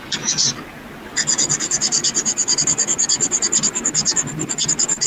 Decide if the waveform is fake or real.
real